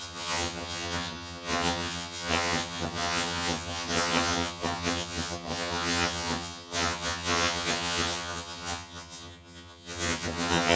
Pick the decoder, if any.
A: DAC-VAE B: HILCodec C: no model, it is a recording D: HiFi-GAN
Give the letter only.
D